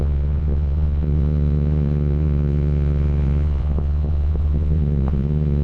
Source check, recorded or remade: remade